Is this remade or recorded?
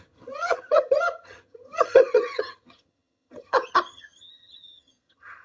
remade